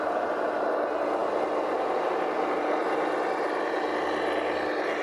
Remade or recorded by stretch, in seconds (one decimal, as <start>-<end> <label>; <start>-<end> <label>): 0.0-5.0 recorded

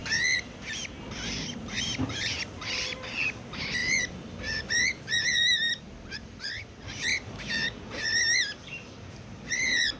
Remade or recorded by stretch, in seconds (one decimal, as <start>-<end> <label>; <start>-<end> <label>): 0.0-7.1 remade; 7.1-9.6 recorded; 9.6-10.0 remade

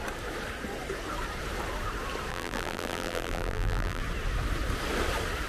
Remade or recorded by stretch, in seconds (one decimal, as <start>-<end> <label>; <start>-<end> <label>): 0.0-2.3 recorded; 2.3-4.0 remade; 4.0-5.5 recorded

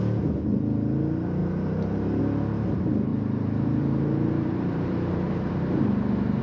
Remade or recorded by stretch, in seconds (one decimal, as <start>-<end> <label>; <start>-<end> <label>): 0.0-1.4 recorded; 1.4-2.2 remade; 2.2-3.1 recorded; 3.1-6.4 remade

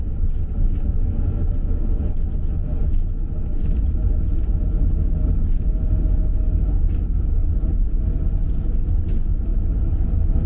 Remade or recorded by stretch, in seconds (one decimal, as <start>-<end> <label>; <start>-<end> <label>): 0.0-2.7 recorded; 2.7-5.9 remade; 5.9-9.5 recorded; 9.5-10.5 remade

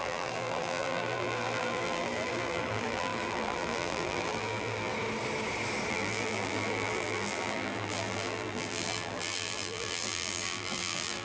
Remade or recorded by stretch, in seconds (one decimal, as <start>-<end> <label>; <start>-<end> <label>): 0.0-4.9 remade; 4.9-5.9 recorded; 5.9-11.2 remade

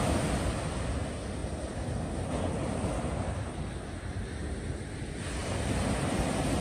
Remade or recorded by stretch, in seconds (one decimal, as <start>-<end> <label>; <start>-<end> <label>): 0.0-1.4 recorded; 1.4-3.7 remade; 3.7-5.4 recorded; 5.4-6.6 remade